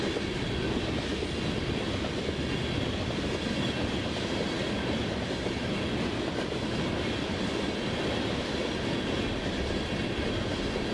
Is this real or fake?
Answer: real